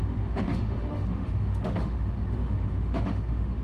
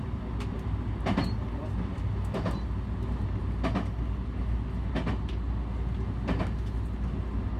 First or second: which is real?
second